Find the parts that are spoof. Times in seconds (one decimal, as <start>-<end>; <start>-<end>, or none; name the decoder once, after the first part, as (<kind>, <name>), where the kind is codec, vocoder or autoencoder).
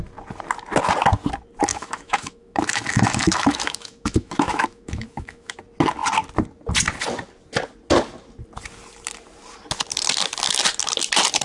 1.7-5.6 (autoencoder, DAC-VAE)